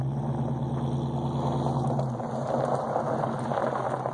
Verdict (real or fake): real